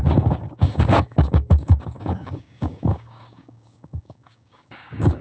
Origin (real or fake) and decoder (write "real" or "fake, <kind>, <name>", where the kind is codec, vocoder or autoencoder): fake, codec, DAC